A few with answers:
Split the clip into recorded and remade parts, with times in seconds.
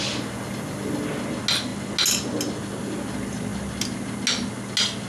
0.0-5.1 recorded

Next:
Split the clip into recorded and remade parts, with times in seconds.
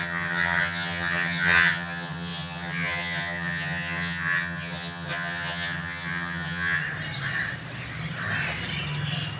0.0-6.8 remade; 6.8-9.4 recorded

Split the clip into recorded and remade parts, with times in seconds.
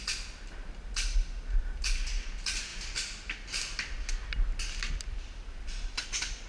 0.0-6.5 recorded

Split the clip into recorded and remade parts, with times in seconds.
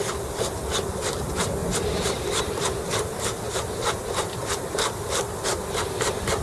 0.0-6.4 recorded